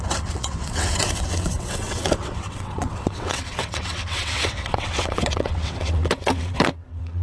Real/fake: fake